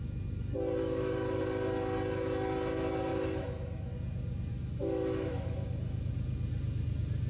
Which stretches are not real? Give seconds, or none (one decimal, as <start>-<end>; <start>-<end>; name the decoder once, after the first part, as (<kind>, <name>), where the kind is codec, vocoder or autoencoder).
0.8-1.4 (autoencoder, DAC-VAE); 3.1-3.9; 4.5-6.1